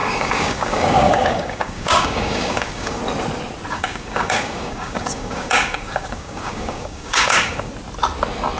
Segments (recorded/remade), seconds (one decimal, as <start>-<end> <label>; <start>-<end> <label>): 0.0-3.0 remade; 3.0-3.7 recorded; 3.7-7.7 remade; 7.7-8.6 recorded